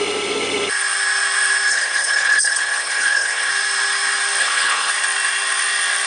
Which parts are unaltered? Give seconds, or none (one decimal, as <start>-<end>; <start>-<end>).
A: 0.0-1.7; 3.5-4.4; 4.9-6.1